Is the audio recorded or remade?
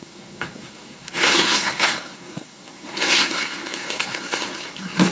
remade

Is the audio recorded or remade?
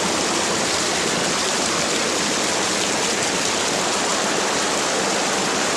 recorded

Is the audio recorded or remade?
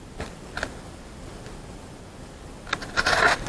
recorded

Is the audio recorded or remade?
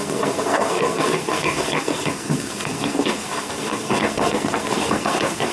remade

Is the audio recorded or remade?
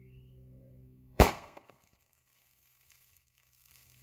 remade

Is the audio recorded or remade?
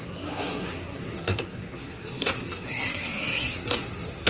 remade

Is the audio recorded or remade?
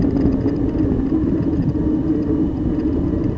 recorded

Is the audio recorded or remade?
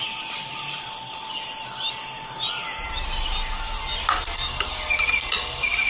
recorded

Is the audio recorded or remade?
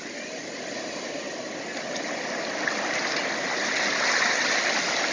recorded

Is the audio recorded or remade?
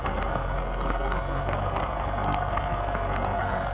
remade